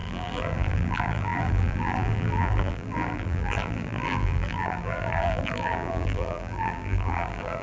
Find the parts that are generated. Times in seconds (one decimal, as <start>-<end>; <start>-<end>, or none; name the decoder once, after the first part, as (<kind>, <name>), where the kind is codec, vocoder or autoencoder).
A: 0.0-7.6 (vocoder, BigVGAN v2)